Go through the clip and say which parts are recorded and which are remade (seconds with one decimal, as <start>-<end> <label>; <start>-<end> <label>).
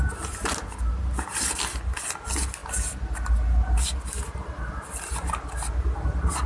0.0-6.5 recorded